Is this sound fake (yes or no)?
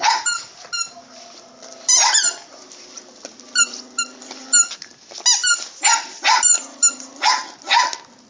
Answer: no